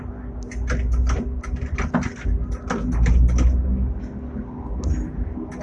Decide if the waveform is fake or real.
real